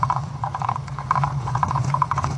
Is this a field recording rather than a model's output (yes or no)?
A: no